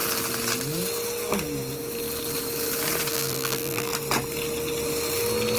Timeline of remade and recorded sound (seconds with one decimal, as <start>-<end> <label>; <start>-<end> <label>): 0.0-3.1 recorded; 3.1-3.9 remade; 3.9-5.6 recorded